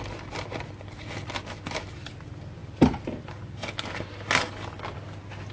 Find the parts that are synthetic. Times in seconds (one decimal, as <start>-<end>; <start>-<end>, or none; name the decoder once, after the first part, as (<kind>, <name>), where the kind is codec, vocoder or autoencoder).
none